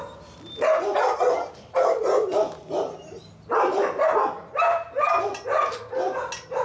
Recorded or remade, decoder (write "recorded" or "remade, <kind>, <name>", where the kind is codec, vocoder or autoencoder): recorded